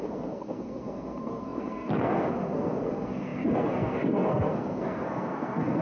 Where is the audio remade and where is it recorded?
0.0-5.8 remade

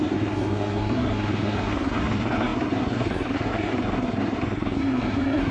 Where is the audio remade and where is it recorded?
0.0-5.5 remade

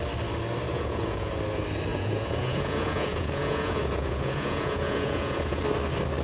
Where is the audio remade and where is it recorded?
0.0-0.7 recorded; 0.7-1.3 remade; 1.3-1.9 recorded; 1.9-5.6 remade; 5.6-6.2 recorded

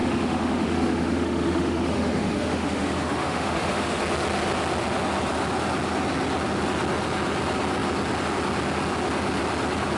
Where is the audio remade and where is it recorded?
0.0-4.0 remade; 4.0-10.0 recorded

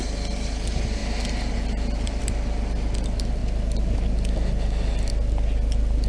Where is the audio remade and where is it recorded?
0.0-1.0 recorded; 1.0-2.2 remade; 2.2-6.1 recorded

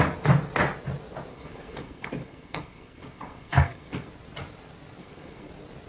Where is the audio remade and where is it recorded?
0.0-1.3 recorded; 1.3-4.1 remade; 4.1-5.0 recorded; 5.0-5.5 remade; 5.5-5.9 recorded

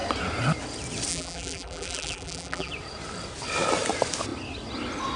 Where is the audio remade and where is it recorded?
0.0-1.1 recorded; 1.1-2.7 remade; 2.7-5.2 recorded